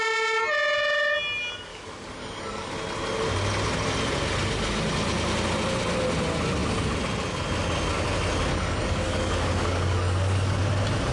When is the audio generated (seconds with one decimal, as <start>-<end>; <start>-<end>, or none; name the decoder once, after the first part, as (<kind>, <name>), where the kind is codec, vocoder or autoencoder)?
1.7-2.7 (codec, DAC); 8.5-10.6